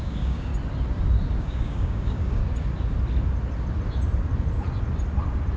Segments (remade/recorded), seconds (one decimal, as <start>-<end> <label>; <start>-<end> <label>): 0.0-0.5 remade; 0.5-1.4 recorded; 1.4-2.4 remade; 2.4-5.6 recorded